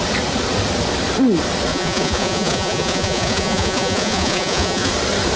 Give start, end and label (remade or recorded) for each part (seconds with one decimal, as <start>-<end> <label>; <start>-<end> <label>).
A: 0.0-1.7 recorded; 1.7-4.9 remade; 4.9-5.4 recorded